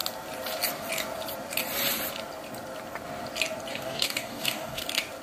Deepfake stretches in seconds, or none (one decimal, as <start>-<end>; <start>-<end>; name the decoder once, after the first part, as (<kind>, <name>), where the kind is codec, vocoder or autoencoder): 3.7-4.8 (codec, DAC)